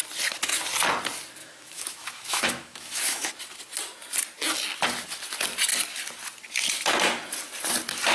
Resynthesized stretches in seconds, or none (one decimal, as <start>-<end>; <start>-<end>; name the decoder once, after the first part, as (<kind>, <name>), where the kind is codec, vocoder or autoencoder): 1.4-3.3 (autoencoder, DAC-VAE)